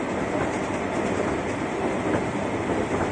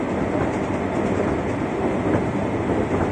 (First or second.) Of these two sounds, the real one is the second